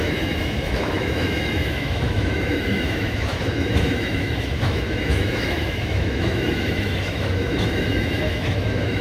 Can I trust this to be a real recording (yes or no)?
no